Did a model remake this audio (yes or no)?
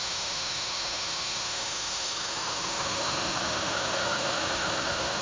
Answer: yes